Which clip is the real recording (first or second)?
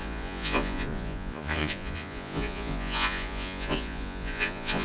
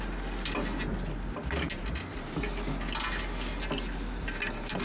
second